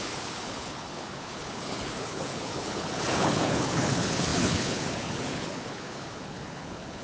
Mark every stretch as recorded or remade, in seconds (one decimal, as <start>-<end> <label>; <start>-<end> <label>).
0.0-7.0 remade